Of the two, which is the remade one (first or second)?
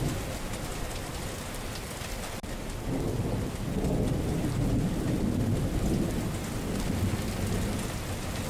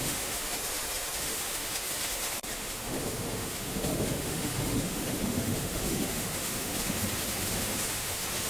second